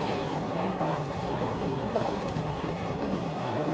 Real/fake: fake